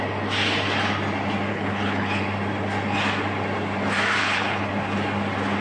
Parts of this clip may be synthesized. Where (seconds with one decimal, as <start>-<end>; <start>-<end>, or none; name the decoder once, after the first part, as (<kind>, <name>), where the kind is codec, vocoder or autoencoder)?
1.5-2.2 (codec, HILCodec); 4.2-4.7